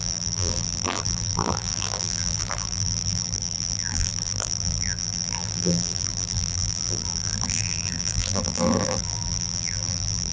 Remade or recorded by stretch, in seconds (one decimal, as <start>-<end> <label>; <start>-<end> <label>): 0.0-10.3 remade